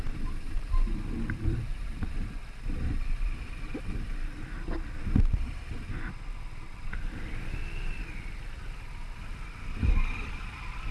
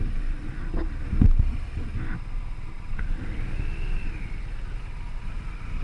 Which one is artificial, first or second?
first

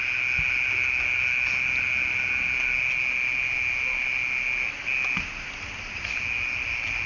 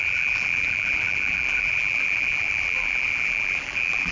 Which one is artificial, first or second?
second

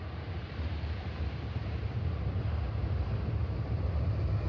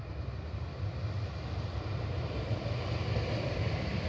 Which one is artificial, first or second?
first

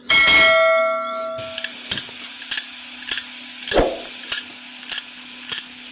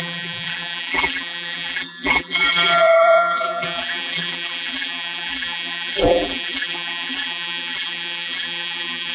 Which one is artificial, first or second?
second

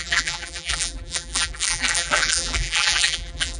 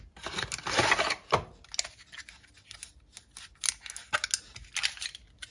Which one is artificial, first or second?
first